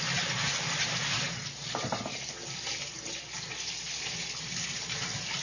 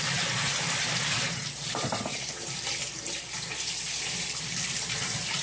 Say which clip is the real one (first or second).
first